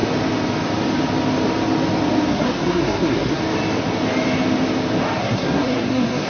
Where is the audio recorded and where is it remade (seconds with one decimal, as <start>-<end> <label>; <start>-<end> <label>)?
0.0-2.3 recorded; 2.3-3.4 remade; 3.4-5.2 recorded; 5.2-6.3 remade